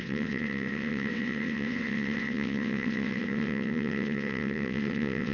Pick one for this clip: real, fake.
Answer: fake